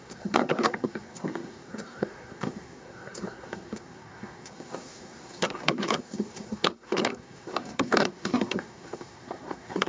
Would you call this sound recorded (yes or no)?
no